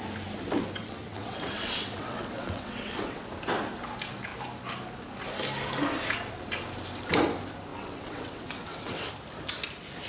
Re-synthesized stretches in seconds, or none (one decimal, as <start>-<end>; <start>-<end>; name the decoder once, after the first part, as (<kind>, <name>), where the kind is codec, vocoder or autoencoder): 0.8-3.2 (vocoder, WaveNeXt); 7.7-9.1